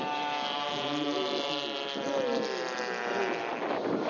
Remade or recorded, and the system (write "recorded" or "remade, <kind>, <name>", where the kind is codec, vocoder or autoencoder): recorded